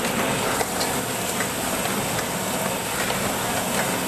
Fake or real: real